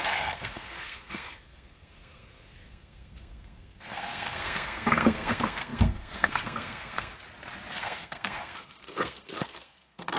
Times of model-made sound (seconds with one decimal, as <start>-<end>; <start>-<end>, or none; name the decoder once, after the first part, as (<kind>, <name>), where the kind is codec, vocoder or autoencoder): 0.0-7.1 (codec, SNAC); 7.7-10.2